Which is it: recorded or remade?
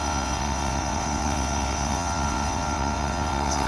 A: remade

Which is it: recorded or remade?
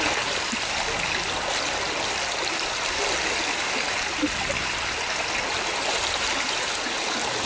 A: recorded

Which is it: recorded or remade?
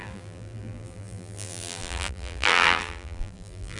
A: remade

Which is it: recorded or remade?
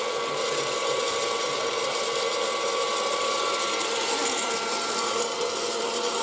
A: recorded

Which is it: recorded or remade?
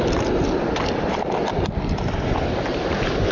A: recorded